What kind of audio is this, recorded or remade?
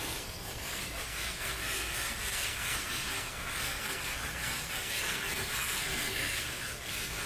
remade